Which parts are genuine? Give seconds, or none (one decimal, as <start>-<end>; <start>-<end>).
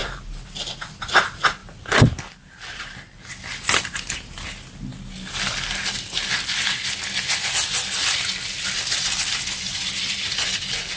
0.0-1.6; 4.1-11.0